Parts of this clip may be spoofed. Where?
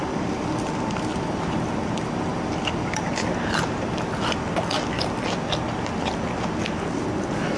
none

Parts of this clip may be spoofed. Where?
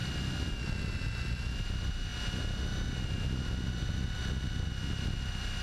none